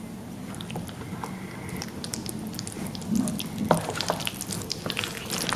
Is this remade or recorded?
recorded